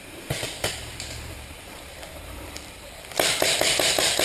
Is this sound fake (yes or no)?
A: yes